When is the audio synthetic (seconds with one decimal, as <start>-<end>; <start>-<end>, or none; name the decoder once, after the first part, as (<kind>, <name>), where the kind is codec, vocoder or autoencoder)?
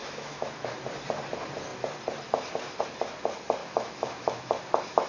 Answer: 0.0-0.8 (autoencoder, DAC-VAE); 3.6-4.6